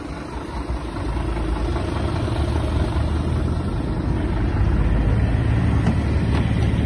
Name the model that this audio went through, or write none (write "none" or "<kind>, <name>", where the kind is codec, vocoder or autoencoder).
none